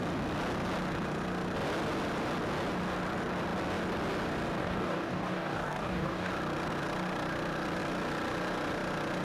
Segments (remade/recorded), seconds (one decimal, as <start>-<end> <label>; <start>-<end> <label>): 0.0-4.6 recorded; 4.6-6.3 remade; 6.3-9.2 recorded